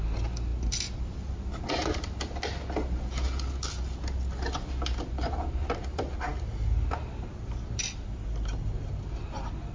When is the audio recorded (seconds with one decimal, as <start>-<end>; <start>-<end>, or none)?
0.0-9.7

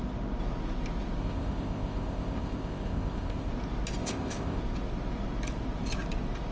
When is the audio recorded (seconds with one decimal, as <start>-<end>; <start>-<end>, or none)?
0.0-1.2; 3.5-4.0; 4.6-6.5

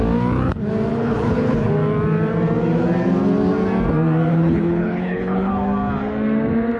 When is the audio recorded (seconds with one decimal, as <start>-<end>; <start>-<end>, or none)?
0.0-0.9; 1.7-4.3; 5.5-6.8